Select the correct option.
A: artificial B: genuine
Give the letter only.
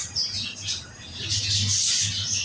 B